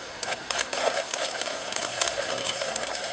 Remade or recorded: remade